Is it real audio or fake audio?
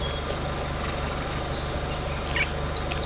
real